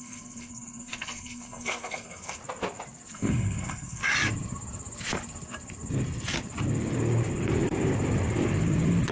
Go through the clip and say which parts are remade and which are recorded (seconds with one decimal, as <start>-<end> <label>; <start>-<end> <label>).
0.0-2.4 remade; 2.4-3.1 recorded; 3.1-4.0 remade; 4.0-9.1 recorded